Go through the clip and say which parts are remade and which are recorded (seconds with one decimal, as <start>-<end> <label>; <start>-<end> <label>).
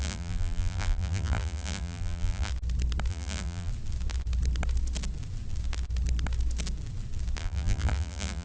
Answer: 0.0-2.5 remade; 2.5-3.1 recorded; 3.1-3.7 remade; 3.7-7.4 recorded; 7.4-8.4 remade